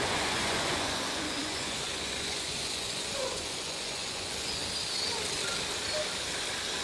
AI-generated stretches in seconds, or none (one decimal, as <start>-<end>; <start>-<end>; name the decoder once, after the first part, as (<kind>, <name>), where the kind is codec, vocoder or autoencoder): 0.0-4.6 (vocoder, Vocos)